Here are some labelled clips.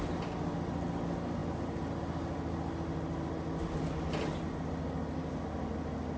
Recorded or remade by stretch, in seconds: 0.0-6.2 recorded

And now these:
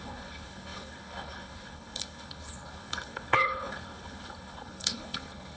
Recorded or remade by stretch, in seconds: 0.0-5.6 remade

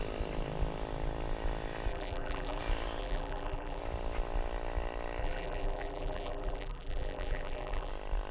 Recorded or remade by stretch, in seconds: 0.0-1.9 recorded; 1.9-2.6 remade; 2.6-3.0 recorded; 3.0-3.8 remade; 3.8-5.2 recorded; 5.2-7.9 remade; 7.9-8.3 recorded

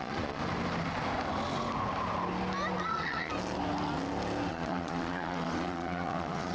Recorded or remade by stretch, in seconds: 0.0-0.4 remade; 0.4-2.8 recorded; 2.8-3.3 remade; 3.3-4.5 recorded; 4.5-6.5 remade